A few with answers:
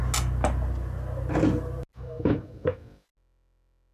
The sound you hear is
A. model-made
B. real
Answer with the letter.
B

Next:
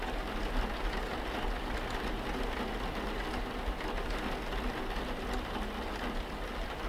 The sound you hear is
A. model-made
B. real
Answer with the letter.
B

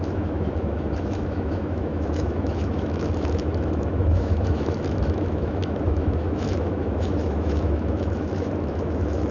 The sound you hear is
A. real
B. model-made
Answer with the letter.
B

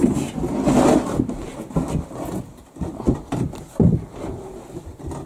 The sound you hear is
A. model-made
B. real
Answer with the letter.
B